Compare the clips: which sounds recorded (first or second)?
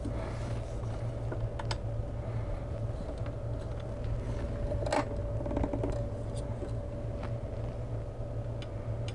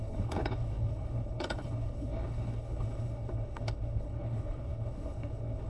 first